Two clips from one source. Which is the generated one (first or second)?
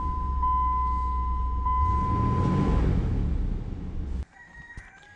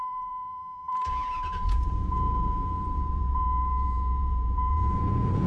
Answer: second